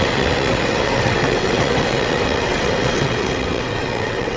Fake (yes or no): yes